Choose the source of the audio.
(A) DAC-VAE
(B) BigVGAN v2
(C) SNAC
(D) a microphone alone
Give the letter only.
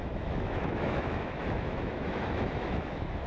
A